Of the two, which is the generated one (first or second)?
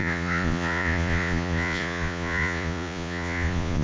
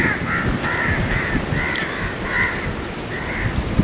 first